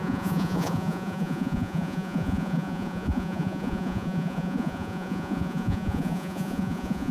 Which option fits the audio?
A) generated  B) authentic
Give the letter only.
A